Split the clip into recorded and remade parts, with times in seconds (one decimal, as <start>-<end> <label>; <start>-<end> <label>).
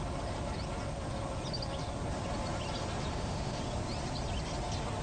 0.0-3.1 recorded; 3.1-3.6 remade; 3.6-5.0 recorded